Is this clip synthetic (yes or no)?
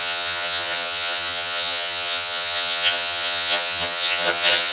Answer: yes